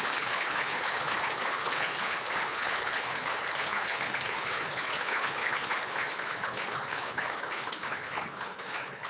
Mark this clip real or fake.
fake